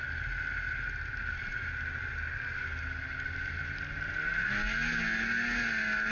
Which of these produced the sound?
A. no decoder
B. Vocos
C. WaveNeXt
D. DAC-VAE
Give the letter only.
A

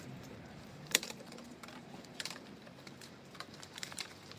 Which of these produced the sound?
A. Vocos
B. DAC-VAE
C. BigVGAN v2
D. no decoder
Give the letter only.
C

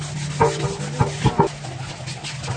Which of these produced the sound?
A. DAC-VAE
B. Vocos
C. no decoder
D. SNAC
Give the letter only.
C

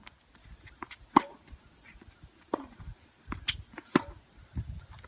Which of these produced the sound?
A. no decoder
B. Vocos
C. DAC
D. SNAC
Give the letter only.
A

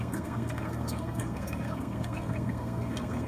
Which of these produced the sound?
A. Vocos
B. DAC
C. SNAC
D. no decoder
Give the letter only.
C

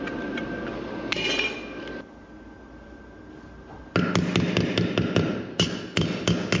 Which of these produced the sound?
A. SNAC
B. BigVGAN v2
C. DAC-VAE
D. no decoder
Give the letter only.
D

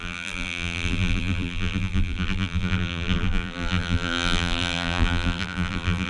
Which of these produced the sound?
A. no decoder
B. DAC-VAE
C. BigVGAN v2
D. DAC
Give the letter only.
C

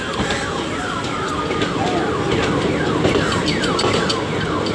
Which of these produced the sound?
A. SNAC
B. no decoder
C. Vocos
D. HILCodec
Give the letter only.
B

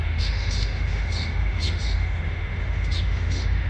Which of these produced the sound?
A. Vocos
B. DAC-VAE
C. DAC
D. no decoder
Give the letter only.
B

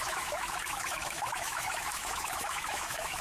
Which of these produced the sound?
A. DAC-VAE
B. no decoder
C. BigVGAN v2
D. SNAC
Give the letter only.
A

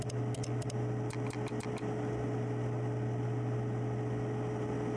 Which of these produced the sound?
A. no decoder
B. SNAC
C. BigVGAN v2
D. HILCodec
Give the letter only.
A